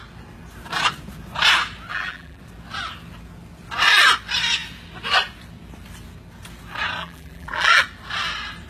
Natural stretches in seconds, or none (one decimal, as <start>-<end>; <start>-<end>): 0.0-1.9; 2.4-7.0; 7.8-8.7